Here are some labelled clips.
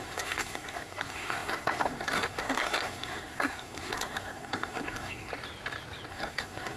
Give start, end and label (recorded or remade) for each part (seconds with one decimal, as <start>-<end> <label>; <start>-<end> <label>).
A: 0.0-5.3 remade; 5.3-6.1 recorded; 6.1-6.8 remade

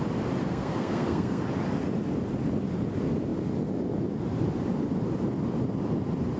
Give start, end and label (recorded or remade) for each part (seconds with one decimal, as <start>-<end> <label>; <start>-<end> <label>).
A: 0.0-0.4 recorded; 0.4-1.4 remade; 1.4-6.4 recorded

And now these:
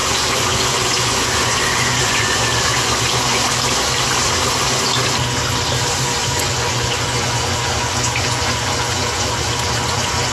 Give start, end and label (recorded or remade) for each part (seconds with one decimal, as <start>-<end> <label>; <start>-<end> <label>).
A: 0.0-3.4 remade; 3.4-6.2 recorded; 6.2-10.3 remade

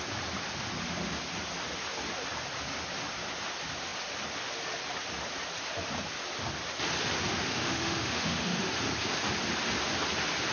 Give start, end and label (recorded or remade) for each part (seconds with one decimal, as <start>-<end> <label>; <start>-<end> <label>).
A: 0.0-7.3 recorded; 7.3-8.6 remade; 8.6-10.5 recorded

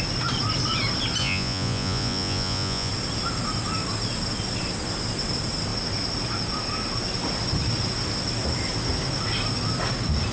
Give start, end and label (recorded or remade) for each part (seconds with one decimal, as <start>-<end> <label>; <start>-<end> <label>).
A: 0.0-1.2 recorded; 1.2-2.9 remade; 2.9-10.3 recorded

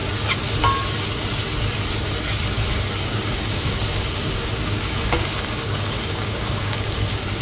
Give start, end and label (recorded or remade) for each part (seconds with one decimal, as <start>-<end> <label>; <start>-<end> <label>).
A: 0.0-3.0 recorded; 3.0-7.4 remade